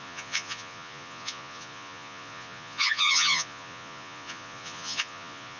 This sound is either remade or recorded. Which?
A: remade